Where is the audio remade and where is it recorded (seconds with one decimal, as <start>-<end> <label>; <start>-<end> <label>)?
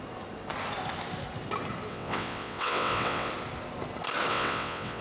0.0-1.9 recorded; 1.9-3.3 remade; 3.3-4.3 recorded; 4.3-5.0 remade